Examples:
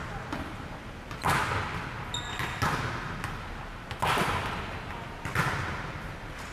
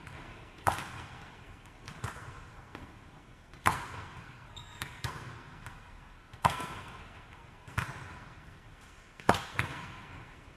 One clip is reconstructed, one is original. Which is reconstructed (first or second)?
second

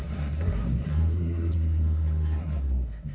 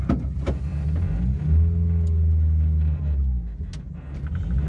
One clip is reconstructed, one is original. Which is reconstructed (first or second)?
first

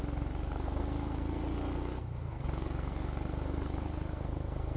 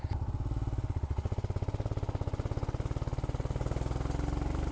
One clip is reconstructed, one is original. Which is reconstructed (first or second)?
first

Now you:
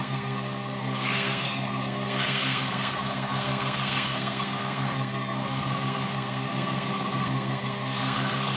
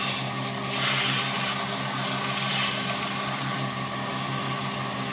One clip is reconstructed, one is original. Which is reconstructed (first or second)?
first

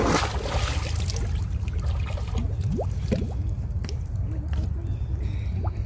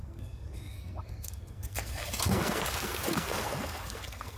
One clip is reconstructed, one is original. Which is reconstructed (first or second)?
second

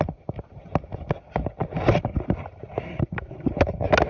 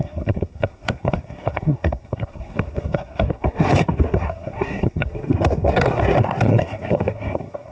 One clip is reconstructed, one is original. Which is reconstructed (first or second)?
second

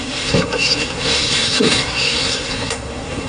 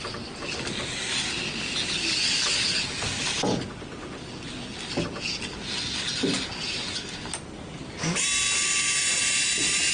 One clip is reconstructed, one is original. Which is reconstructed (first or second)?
first